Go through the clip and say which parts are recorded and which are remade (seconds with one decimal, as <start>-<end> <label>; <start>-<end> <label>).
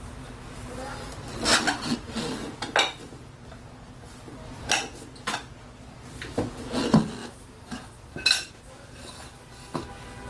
0.0-10.3 recorded